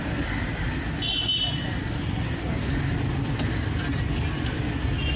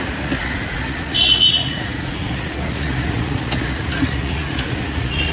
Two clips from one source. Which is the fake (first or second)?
second